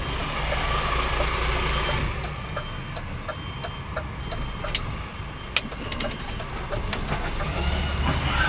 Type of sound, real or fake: real